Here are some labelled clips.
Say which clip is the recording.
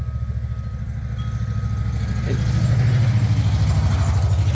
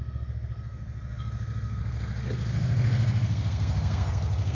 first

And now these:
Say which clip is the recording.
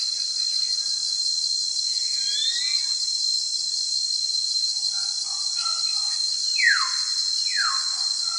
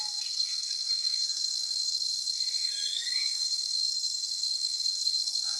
first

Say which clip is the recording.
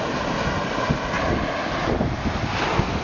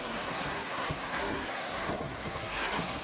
first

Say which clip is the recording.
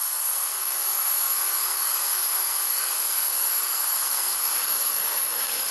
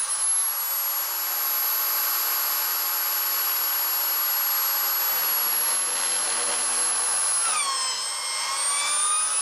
second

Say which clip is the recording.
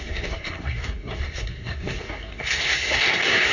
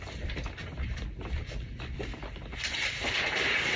second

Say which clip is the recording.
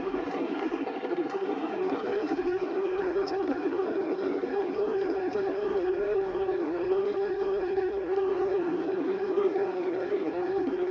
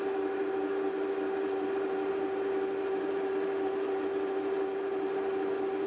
second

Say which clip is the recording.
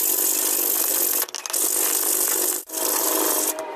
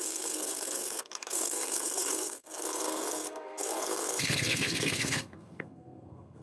first